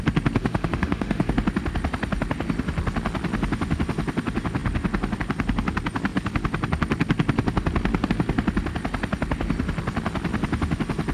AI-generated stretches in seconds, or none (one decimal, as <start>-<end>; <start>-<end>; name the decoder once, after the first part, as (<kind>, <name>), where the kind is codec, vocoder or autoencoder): 0.4-1.3 (autoencoder, DAC-VAE)